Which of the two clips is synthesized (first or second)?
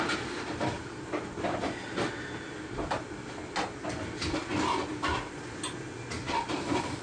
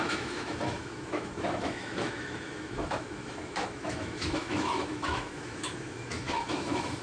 second